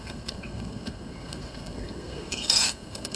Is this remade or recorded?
remade